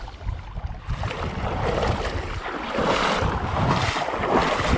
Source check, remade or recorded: recorded